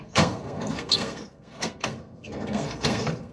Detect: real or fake fake